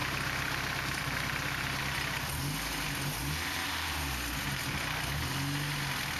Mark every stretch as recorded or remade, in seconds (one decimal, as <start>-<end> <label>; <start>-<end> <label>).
0.0-1.8 remade; 1.8-3.2 recorded; 3.2-4.6 remade; 4.6-6.2 recorded